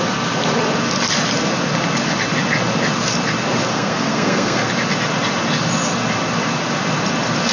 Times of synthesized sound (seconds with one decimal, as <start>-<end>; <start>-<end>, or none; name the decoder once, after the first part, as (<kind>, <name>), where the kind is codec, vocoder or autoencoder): 3.7-4.7 (codec, SNAC)